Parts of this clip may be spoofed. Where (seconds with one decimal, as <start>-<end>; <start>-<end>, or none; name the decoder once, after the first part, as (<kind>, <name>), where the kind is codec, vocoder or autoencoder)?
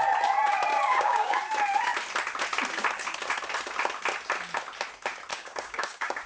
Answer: 0.7-1.4 (codec, DAC); 5.3-6.3